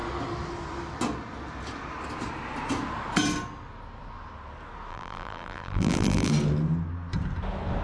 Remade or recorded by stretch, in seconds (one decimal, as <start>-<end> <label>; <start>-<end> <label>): 0.0-4.9 recorded; 4.9-6.3 remade; 6.3-7.8 recorded